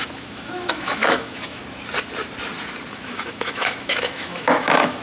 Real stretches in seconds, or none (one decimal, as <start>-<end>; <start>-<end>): 1.6-2.9